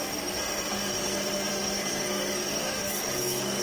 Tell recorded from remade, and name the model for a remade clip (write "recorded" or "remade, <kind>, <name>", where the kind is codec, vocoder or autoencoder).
remade, codec, SNAC